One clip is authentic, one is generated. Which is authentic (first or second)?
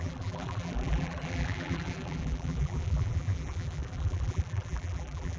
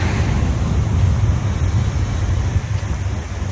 second